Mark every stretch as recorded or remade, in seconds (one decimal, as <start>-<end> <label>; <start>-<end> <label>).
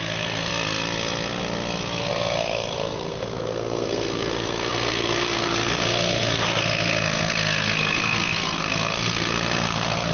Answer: 0.0-0.5 remade; 0.5-2.1 recorded; 2.1-10.1 remade